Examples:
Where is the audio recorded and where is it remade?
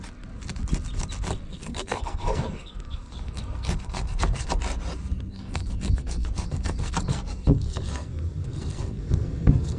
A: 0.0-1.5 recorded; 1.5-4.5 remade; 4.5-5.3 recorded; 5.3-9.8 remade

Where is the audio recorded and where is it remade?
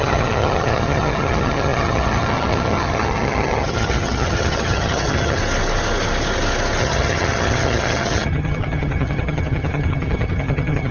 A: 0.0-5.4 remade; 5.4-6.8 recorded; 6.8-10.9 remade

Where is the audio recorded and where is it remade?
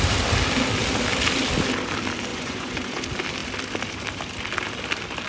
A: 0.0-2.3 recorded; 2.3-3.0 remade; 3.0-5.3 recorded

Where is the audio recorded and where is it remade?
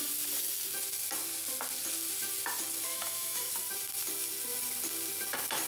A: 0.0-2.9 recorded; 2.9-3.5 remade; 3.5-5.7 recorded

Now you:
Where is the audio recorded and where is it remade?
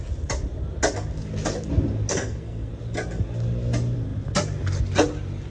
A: 0.0-2.1 recorded; 2.1-2.7 remade; 2.7-5.5 recorded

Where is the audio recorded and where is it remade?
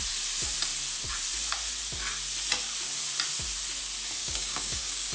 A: 0.0-4.2 recorded; 4.2-5.1 remade